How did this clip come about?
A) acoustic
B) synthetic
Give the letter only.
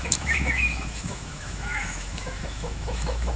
B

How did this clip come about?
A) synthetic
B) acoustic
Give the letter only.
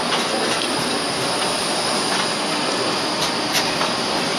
B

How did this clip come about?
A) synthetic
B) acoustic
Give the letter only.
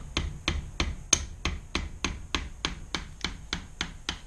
B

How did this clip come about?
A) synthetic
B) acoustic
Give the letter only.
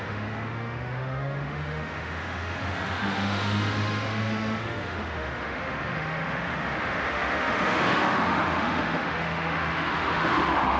A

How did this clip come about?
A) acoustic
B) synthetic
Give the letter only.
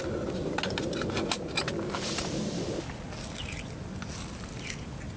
A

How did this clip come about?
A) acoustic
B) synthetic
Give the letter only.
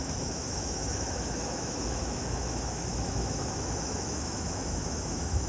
B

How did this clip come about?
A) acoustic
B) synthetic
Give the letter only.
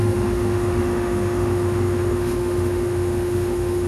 B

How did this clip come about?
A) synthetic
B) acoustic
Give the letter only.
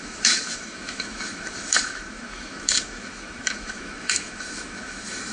A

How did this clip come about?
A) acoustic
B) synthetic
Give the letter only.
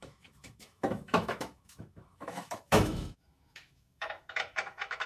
B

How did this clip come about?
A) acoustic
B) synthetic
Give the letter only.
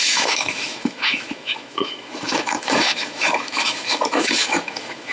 B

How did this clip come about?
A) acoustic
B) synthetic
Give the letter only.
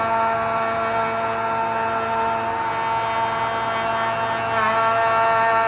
A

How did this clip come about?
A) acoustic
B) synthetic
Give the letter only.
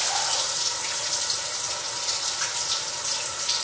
A